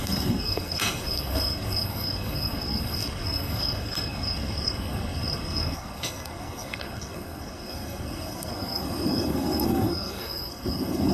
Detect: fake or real fake